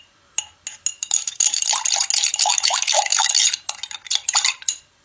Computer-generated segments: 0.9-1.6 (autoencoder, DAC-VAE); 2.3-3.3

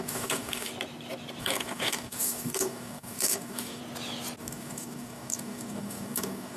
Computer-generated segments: 0.0-0.7 (codec, DAC); 1.4-3.8; 4.4-6.6

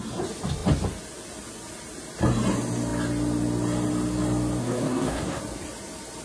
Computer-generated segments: 4.6-5.4 (codec, SNAC)

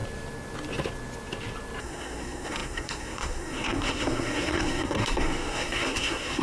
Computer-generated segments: 1.8-6.4 (codec, SNAC)

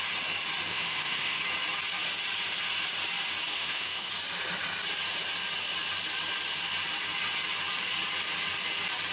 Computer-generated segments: 0.7-1.4 (autoencoder, DAC-VAE); 3.5-4.1

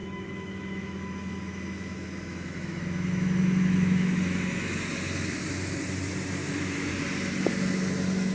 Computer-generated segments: 0.0-4.7 (autoencoder, DAC-VAE); 6.4-6.9

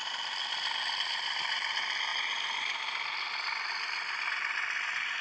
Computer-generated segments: none